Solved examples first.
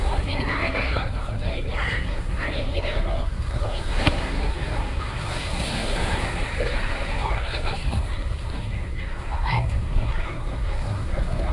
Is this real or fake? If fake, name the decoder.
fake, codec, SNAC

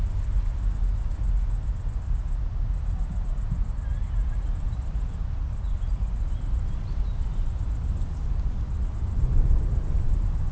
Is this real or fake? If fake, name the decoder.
real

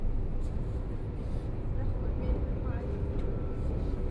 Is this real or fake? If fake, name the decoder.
real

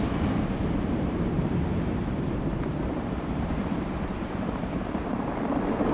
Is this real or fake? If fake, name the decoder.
fake, vocoder, BigVGAN v2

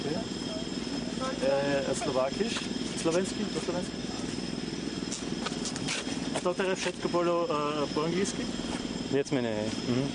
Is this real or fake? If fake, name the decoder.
real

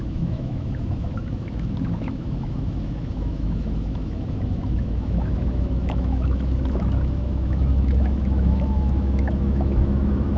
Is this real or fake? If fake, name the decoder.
fake, autoencoder, DAC-VAE